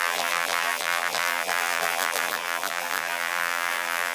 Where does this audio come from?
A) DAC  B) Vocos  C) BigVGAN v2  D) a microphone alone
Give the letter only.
C